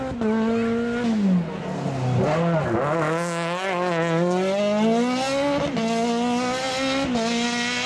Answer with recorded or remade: recorded